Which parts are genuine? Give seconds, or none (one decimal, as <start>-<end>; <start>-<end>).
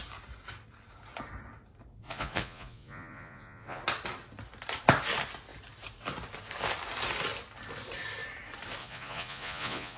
0.0-2.0; 3.8-8.8